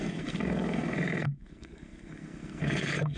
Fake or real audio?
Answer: fake